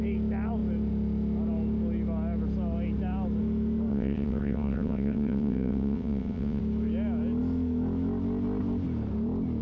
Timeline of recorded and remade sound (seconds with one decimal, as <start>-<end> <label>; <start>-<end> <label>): 0.0-3.9 recorded; 3.9-6.6 remade; 6.6-9.6 recorded